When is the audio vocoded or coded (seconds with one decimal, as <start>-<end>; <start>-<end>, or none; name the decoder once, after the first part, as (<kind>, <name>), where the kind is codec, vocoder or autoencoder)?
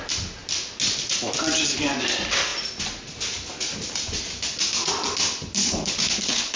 5.6-6.6 (codec, HILCodec)